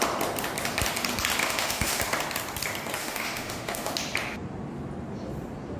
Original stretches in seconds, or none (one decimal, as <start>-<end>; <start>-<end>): 0.0-1.4; 2.0-3.0; 3.9-5.8